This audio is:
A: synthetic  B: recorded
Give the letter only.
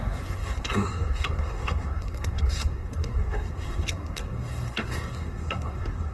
A